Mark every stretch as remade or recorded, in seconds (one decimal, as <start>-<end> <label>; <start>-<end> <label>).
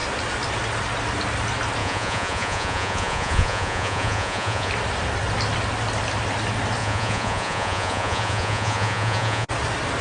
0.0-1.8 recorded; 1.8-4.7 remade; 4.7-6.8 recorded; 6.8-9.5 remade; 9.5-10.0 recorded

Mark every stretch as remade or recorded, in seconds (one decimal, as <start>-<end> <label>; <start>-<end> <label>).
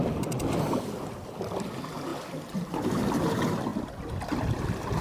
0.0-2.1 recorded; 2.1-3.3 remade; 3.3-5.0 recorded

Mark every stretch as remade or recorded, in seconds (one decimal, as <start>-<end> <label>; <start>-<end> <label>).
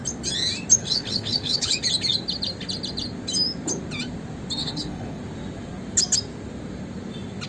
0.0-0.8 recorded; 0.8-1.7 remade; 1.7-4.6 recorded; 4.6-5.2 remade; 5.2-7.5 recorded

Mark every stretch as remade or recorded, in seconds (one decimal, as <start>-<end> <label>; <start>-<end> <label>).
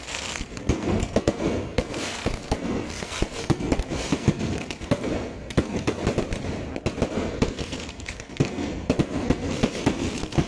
0.0-6.0 remade; 6.0-7.1 recorded; 7.1-10.5 remade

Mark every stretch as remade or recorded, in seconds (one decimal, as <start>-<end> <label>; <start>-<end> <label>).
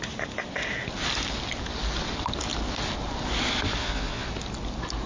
0.0-3.8 recorded; 3.8-4.3 remade; 4.3-5.1 recorded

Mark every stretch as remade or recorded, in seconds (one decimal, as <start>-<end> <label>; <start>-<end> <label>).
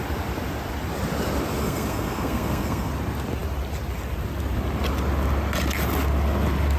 0.0-1.6 recorded; 1.6-2.9 remade; 2.9-6.8 recorded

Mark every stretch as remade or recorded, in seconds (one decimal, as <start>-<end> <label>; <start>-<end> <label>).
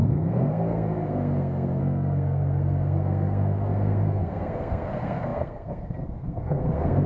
0.0-7.1 remade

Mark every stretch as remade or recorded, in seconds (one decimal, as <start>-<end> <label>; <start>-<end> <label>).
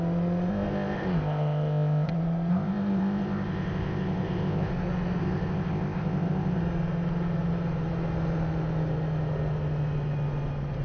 0.0-0.5 recorded; 0.5-2.1 remade; 2.1-2.5 recorded; 2.5-4.7 remade; 4.7-5.2 recorded; 5.2-6.6 remade; 6.6-10.8 recorded